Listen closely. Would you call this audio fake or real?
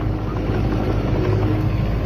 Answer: fake